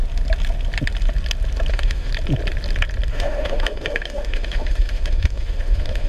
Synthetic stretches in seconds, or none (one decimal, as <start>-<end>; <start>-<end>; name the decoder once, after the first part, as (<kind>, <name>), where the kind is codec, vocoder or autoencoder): 1.7-2.1 (autoencoder, DAC-VAE); 3.1-6.1